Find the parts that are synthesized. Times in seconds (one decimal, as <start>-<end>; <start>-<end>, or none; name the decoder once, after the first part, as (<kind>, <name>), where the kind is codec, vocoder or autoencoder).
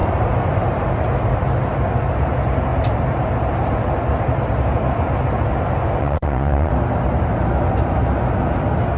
6.0-6.7 (vocoder, Vocos)